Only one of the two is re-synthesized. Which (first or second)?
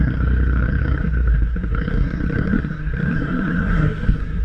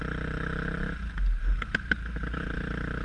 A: first